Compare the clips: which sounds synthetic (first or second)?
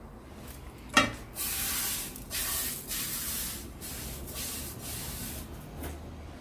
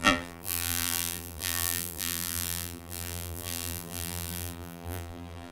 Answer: second